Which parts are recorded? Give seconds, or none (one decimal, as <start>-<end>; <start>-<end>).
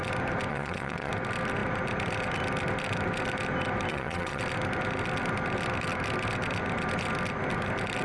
0.0-0.5; 1.1-3.9; 4.4-8.0